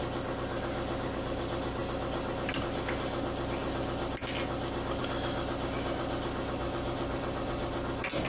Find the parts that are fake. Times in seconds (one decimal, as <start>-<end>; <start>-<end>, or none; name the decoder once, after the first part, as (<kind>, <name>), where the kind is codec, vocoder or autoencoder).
none